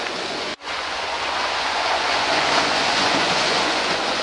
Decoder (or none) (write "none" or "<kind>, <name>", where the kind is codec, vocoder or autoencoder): vocoder, Vocos